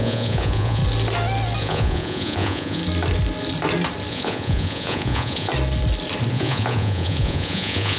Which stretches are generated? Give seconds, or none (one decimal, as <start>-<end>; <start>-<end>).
0.0-0.8; 1.6-2.8; 4.1-5.5; 6.3-8.0

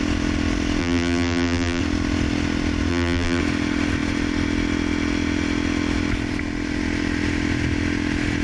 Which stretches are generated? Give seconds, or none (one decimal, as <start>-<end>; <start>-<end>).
0.8-1.8; 2.9-3.4

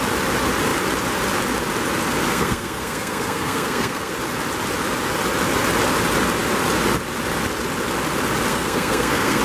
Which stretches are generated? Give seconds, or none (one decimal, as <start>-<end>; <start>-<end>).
2.3-4.1; 8.5-9.4

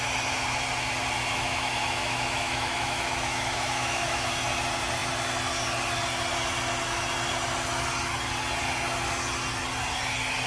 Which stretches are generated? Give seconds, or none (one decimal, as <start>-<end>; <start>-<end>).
1.3-4.3

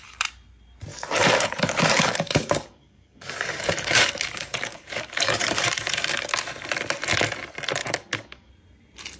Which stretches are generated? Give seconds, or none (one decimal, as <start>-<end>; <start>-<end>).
0.9-5.7; 7.8-8.5

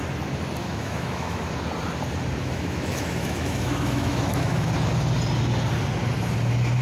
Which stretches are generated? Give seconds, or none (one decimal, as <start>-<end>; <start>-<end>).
0.6-1.5; 2.4-4.7

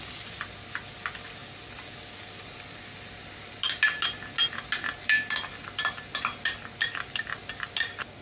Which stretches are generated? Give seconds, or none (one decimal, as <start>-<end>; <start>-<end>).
none

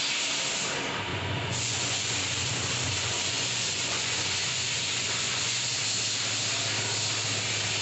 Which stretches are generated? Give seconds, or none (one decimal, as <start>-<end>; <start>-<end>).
1.1-5.8